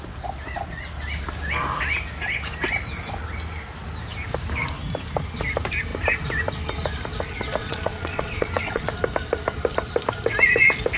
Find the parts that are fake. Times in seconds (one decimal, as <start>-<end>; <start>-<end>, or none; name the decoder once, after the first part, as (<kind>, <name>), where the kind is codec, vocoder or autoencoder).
7.6-8.9 (vocoder, WaveNeXt)